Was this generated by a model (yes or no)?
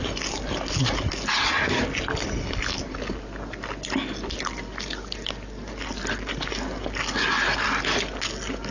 no